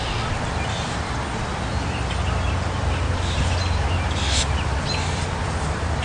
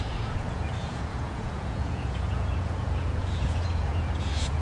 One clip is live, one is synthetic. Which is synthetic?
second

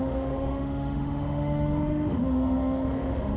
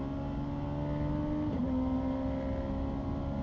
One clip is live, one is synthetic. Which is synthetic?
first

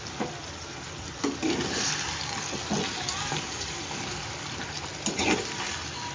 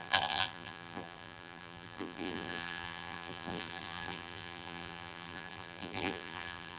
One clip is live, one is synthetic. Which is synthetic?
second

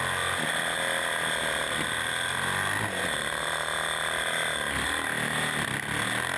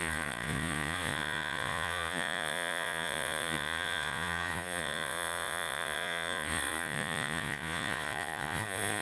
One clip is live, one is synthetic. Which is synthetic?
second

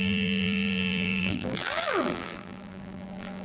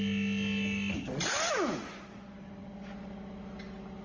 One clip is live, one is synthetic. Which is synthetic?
first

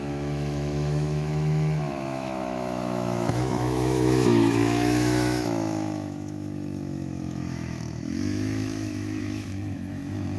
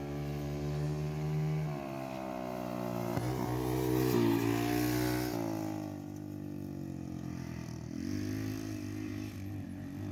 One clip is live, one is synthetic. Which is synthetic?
first